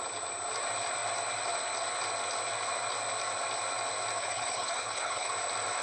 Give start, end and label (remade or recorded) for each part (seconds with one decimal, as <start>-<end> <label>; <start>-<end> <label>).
0.0-4.2 recorded; 4.2-5.3 remade; 5.3-5.8 recorded